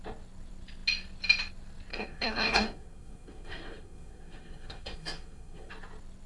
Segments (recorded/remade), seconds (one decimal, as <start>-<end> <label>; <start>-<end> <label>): 0.0-1.9 recorded; 1.9-5.7 remade; 5.7-6.3 recorded